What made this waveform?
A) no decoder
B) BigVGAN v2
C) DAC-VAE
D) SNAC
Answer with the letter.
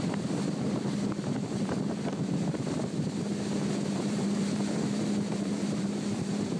B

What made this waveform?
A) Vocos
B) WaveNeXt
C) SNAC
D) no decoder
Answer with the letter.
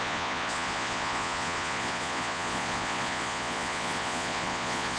A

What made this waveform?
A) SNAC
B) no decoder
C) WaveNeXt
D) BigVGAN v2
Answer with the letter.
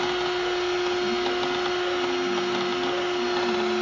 B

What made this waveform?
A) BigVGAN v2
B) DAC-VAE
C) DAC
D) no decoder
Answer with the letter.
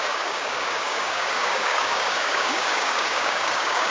C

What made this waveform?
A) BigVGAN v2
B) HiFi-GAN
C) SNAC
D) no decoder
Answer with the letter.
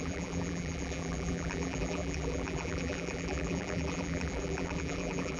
A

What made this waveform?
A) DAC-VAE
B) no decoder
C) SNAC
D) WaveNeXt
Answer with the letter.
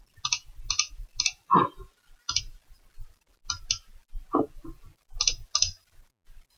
B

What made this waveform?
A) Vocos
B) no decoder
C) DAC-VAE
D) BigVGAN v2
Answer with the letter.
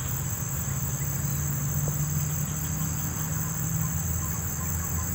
B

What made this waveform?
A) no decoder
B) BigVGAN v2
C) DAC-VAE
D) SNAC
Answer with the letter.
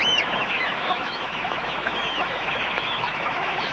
C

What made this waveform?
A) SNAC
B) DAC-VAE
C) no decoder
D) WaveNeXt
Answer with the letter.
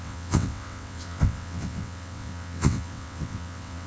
D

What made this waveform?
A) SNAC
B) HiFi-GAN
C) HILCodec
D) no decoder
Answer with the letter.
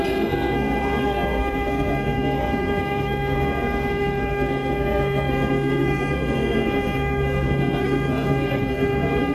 A